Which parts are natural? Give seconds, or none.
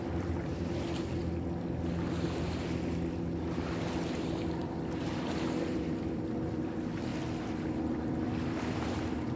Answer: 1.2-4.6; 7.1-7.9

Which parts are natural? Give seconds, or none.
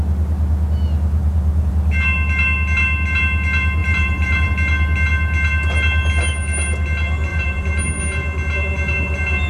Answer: 0.0-1.2; 1.7-3.8; 4.5-7.3; 8.0-9.5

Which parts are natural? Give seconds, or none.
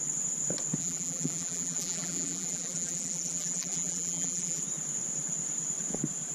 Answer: 0.0-0.8; 4.6-6.3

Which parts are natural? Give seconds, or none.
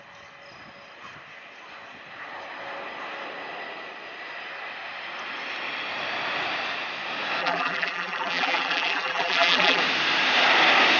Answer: 0.0-7.4; 9.8-11.0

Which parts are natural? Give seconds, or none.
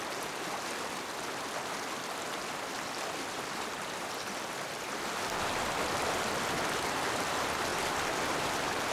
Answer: 0.0-7.7; 8.3-8.9